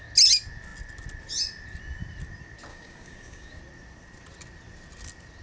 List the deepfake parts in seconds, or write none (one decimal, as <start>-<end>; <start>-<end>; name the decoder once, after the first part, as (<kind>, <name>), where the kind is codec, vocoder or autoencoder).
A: 2.7-3.6 (codec, DAC)